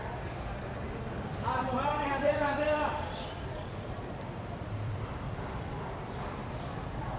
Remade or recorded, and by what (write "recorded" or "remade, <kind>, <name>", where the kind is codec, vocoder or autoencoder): remade, vocoder, BigVGAN v2